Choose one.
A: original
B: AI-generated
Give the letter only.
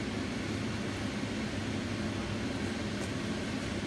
A